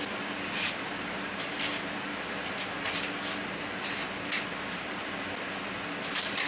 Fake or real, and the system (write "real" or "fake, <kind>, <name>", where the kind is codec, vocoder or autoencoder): real